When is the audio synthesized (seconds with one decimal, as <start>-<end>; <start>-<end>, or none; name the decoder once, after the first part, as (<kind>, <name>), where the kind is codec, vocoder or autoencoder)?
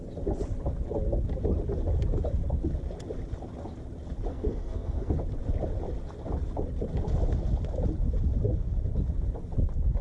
4.3-5.1 (codec, SNAC)